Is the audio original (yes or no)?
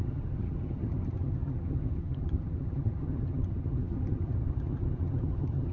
no